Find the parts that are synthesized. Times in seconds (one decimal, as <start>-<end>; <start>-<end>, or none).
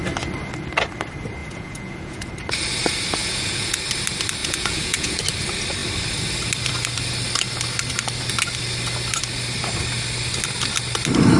1.4-2.3; 3.2-3.8; 4.4-5.2